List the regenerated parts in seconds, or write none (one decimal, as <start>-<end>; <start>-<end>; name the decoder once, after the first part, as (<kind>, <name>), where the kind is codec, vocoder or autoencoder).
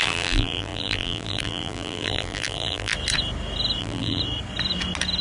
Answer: 0.0-2.9 (vocoder, BigVGAN v2); 3.8-4.2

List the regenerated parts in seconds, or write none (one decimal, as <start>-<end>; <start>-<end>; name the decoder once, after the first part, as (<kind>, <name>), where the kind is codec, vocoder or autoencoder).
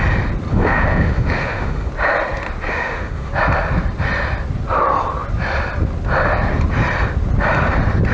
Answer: 0.5-1.9 (autoencoder, DAC-VAE); 2.7-3.3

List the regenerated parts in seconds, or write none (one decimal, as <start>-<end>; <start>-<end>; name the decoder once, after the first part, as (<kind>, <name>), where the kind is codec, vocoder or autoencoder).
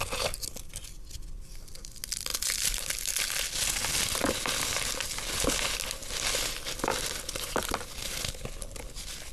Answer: none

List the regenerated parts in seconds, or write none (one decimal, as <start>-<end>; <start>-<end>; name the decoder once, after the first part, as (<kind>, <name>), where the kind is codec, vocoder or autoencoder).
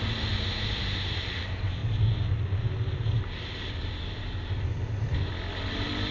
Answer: none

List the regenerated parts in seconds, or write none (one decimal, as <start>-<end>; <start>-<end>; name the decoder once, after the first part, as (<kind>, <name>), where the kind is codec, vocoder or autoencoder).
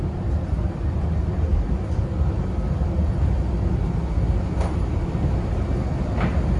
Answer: none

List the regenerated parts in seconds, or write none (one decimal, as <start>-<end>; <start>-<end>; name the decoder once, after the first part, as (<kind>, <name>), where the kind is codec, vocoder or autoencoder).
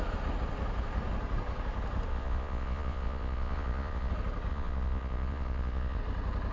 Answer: 2.1-4.1 (vocoder, Vocos); 4.5-6.0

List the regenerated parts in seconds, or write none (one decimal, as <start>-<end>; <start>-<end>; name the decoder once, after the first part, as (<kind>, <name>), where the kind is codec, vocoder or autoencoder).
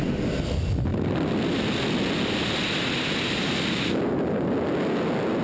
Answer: none